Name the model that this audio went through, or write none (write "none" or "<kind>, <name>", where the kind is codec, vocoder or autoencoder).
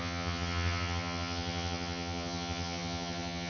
vocoder, HiFi-GAN